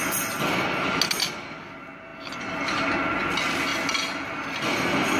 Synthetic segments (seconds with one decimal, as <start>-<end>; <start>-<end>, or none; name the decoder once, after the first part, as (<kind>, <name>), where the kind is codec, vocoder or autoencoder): none